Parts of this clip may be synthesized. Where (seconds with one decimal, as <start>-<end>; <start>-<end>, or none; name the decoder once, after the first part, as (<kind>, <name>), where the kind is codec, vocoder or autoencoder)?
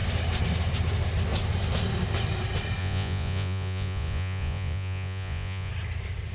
2.8-5.7 (vocoder, Vocos)